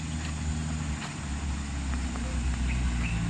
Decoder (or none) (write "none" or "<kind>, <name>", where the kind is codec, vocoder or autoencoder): none